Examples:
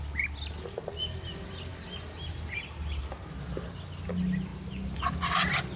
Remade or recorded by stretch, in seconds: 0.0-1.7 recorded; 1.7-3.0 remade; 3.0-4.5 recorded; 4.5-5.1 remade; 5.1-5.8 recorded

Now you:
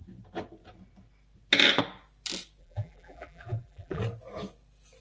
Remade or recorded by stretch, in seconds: 0.0-2.6 recorded; 2.6-4.0 remade; 4.0-5.0 recorded

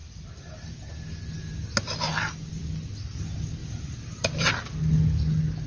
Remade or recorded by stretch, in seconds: 0.0-0.7 remade; 0.7-3.6 recorded; 3.6-4.5 remade; 4.5-5.7 recorded